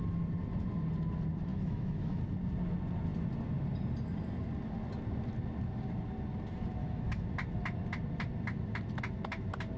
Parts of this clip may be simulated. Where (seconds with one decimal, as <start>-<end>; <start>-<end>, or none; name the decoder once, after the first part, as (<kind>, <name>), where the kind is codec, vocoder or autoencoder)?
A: 1.5-2.2 (autoencoder, DAC-VAE); 6.8-7.3